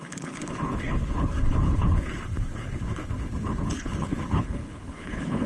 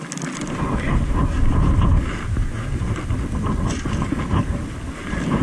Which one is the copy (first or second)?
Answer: first